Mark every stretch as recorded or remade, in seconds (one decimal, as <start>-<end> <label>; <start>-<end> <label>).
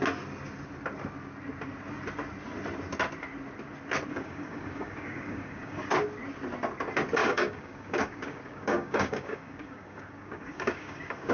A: 0.0-4.1 recorded; 4.1-5.9 remade; 5.9-7.2 recorded; 7.2-11.3 remade